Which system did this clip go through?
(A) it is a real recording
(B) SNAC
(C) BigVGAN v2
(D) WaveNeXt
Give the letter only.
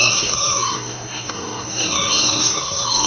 B